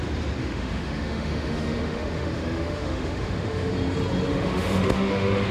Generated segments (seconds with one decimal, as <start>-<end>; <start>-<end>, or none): 0.4-3.7; 4.3-5.5